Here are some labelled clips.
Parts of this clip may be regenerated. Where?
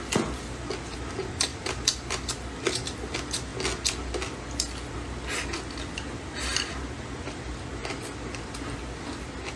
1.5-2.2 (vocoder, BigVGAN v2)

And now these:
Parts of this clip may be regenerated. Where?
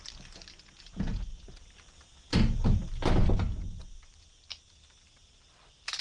0.9-1.7 (vocoder, Vocos)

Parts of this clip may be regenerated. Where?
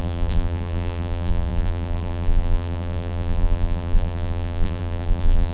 0.0-5.5 (vocoder, BigVGAN v2)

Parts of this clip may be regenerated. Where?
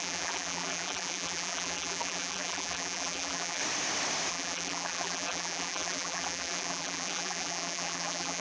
0.0-3.6 (vocoder, BigVGAN v2); 4.3-8.4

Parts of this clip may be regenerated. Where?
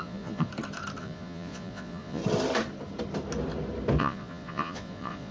0.0-0.5 (vocoder, Vocos); 1.0-2.2; 4.0-5.3